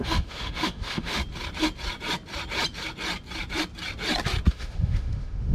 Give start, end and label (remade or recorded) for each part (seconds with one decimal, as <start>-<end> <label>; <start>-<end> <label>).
0.0-1.2 remade; 1.2-4.5 recorded; 4.5-5.5 remade